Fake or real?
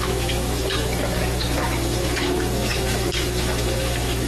fake